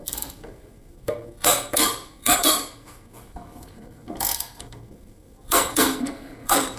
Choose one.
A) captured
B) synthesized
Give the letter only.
B